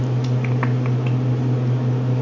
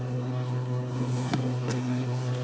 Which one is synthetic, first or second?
second